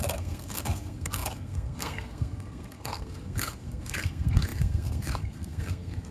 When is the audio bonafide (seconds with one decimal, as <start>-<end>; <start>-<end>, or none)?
none